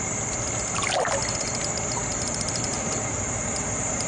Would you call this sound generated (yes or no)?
no